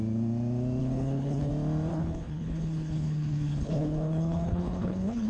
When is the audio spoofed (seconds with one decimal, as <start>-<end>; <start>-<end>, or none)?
0.8-1.5; 1.9-5.3